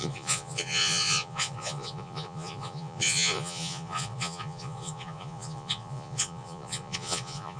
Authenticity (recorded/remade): remade